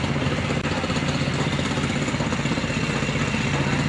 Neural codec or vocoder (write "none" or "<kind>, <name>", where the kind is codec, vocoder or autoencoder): none